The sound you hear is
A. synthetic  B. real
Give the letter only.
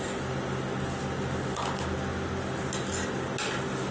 B